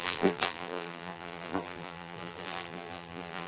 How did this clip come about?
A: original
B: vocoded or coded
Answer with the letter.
B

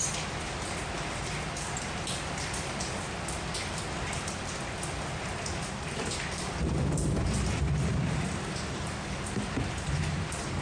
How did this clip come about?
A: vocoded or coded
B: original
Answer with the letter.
A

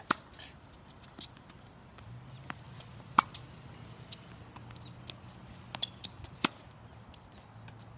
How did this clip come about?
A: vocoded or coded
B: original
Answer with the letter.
B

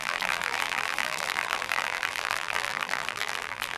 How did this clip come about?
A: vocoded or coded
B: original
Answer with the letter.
A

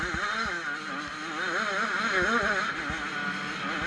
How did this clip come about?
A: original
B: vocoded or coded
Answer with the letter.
A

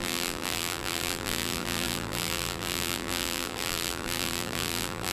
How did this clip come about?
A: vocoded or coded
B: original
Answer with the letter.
A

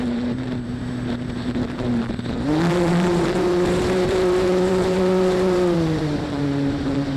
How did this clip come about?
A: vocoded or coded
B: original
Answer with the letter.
A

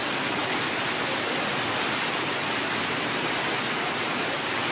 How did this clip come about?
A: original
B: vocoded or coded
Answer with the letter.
B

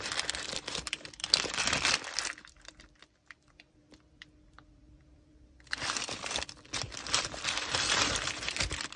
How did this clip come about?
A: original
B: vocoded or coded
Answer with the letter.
B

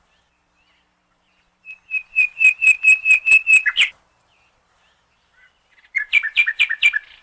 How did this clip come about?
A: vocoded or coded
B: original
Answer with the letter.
A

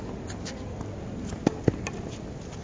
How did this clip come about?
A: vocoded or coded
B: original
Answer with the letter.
B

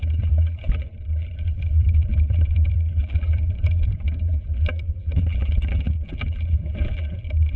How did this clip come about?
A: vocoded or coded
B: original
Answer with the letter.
A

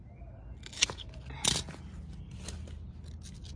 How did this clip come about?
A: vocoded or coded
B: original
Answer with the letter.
B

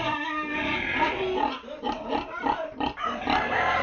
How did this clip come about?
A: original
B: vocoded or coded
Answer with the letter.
B